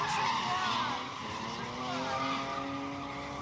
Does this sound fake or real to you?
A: real